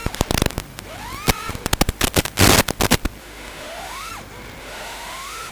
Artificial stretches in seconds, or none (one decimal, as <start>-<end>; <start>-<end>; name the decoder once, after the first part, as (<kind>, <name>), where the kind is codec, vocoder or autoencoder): 3.2-4.1 (autoencoder, DAC-VAE); 4.6-5.5